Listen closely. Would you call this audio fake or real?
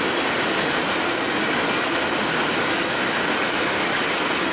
real